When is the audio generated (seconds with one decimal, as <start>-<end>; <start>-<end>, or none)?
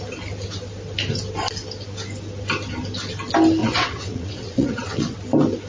3.6-5.2